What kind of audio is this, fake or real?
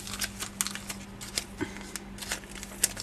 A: real